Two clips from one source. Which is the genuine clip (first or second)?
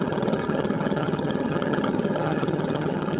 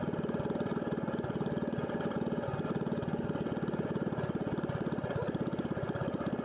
second